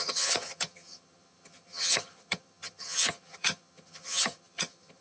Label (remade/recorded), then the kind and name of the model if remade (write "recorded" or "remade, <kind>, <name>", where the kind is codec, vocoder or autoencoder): remade, vocoder, HiFi-GAN